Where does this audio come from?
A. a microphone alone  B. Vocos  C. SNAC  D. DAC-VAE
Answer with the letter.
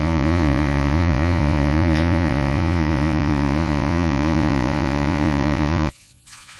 B